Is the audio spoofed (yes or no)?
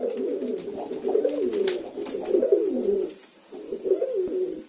no